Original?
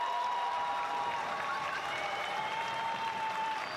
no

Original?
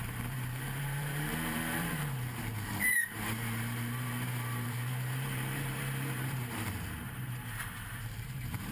no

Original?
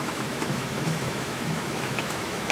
no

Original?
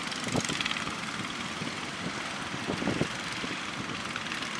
yes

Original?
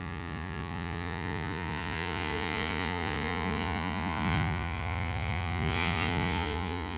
no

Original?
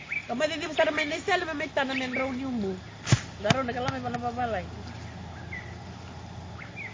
yes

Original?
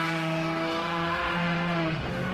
no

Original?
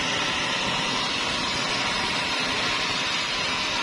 yes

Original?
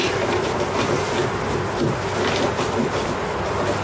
yes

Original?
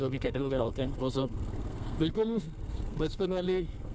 no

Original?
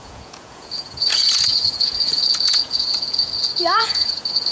no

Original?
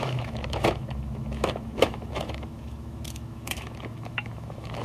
no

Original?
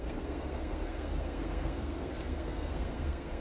no